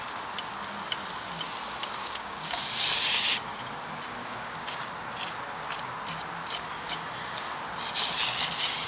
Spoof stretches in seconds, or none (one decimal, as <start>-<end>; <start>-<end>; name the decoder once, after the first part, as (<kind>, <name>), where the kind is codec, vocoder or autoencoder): 1.9-2.6 (codec, DAC); 4.2-4.9